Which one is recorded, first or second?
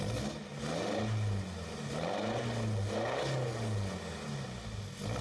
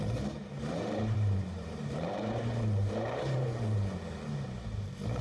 first